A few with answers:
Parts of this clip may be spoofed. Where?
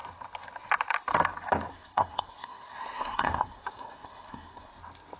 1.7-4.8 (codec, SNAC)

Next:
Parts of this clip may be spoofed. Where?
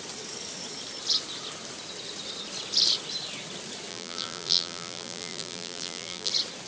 3.9-6.3 (vocoder, BigVGAN v2)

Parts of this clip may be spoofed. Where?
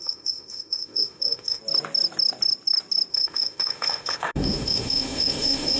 0.0-1.6 (autoencoder, DAC-VAE); 3.1-5.8